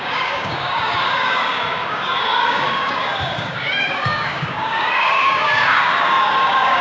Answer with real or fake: fake